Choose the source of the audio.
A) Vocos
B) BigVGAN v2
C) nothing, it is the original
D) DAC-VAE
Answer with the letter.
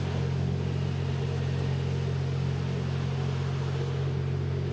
C